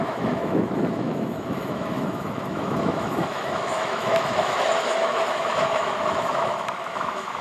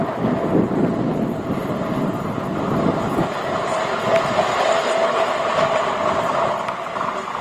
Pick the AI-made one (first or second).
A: first